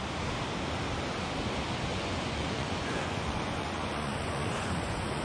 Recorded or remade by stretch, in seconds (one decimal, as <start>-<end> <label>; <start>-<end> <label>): 0.0-1.9 recorded; 1.9-5.2 remade